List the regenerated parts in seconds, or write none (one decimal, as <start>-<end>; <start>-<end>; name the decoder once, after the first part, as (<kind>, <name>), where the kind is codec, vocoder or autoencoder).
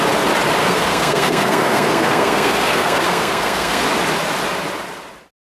0.6-3.8 (codec, SNAC)